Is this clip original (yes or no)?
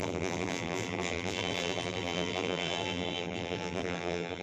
no